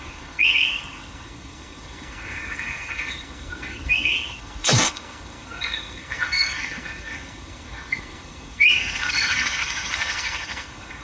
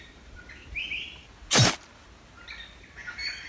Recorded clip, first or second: second